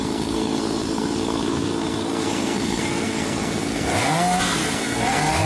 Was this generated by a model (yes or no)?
yes